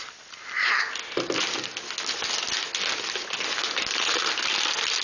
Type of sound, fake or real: real